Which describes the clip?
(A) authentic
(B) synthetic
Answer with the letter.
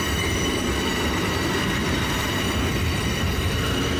B